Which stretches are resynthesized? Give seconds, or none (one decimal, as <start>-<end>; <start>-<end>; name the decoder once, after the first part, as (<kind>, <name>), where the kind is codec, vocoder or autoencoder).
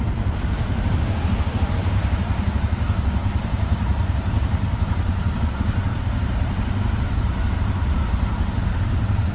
1.8-2.4 (vocoder, BigVGAN v2); 3.2-5.4; 5.9-7.3